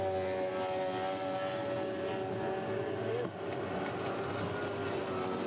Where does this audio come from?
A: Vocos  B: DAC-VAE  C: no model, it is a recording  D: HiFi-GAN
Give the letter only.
C